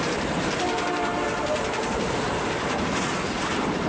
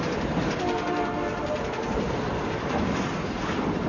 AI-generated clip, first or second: first